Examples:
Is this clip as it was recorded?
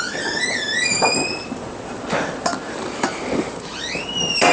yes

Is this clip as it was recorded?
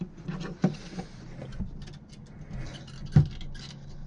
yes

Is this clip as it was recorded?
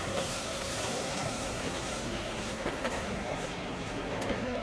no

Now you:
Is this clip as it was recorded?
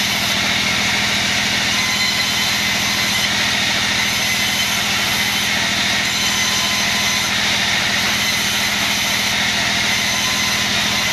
yes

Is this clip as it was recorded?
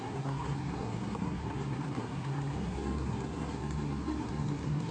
no